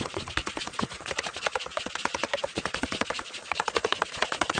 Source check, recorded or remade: remade